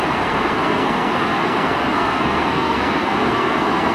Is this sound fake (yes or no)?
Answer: yes